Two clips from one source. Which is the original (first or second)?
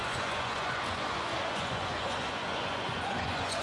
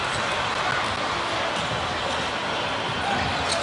second